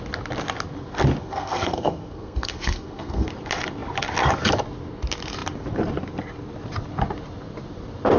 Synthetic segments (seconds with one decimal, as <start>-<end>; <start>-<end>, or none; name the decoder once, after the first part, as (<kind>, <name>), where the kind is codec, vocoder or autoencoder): 1.2-3.3 (codec, SNAC)